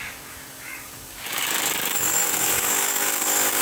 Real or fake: fake